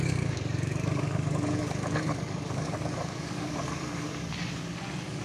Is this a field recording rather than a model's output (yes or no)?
no